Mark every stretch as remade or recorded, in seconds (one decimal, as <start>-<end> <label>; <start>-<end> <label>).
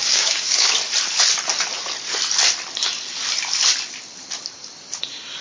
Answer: 0.0-0.7 remade; 0.7-5.4 recorded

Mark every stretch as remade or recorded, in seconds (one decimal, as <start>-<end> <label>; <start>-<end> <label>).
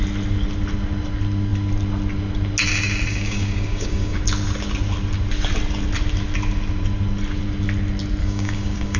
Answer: 0.0-3.1 recorded; 3.1-4.2 remade; 4.2-8.2 recorded; 8.2-9.0 remade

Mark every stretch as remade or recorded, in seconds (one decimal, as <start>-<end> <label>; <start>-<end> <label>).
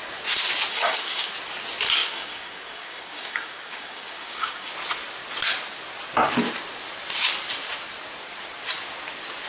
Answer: 0.0-0.7 recorded; 0.7-1.3 remade; 1.3-2.0 recorded; 2.0-4.7 remade; 4.7-9.5 recorded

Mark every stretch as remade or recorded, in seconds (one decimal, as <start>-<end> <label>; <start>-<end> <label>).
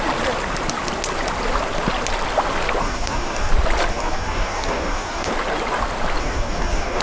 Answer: 0.0-2.8 recorded; 2.8-3.5 remade; 3.5-3.9 recorded; 3.9-5.3 remade; 5.3-6.2 recorded; 6.2-7.0 remade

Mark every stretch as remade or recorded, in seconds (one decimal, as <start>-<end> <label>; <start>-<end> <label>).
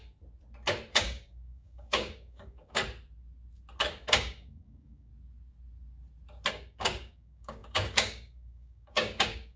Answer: 0.0-0.9 recorded; 0.9-2.8 remade; 2.8-3.9 recorded; 3.9-5.1 remade; 5.1-6.5 recorded; 6.5-9.6 remade